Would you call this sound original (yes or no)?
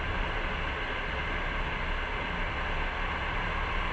yes